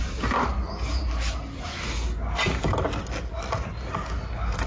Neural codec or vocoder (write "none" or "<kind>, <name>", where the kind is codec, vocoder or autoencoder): none